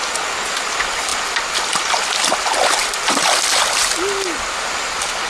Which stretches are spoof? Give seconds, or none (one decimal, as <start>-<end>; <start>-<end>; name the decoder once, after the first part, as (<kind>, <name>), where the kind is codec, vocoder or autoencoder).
none